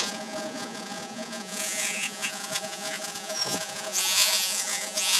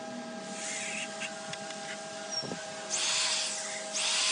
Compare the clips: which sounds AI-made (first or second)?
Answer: first